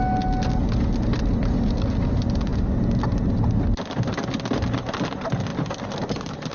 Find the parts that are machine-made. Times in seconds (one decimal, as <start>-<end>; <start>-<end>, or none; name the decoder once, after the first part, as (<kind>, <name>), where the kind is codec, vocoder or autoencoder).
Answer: none